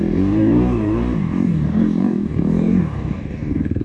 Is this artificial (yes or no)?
yes